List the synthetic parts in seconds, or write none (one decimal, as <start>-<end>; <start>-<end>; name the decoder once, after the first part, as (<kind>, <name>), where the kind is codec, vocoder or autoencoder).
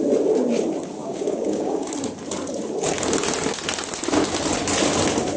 1.0-1.9 (codec, DAC)